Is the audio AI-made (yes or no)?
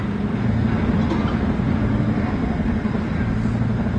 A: no